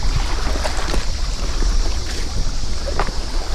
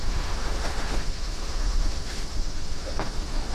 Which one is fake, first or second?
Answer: second